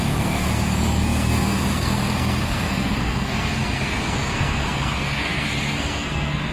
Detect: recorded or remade remade